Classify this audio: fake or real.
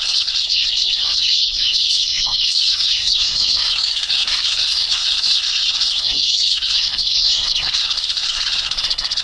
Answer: fake